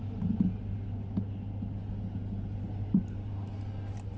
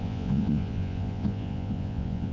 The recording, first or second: first